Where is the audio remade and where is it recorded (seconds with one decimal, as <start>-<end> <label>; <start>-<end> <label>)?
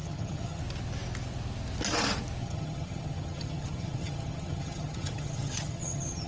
0.0-0.6 remade; 0.6-2.4 recorded; 2.4-6.3 remade